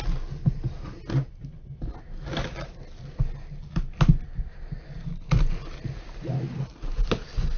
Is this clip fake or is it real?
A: real